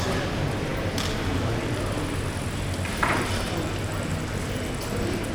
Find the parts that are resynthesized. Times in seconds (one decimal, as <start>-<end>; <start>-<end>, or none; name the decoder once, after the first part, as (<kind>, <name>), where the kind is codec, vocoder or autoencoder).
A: none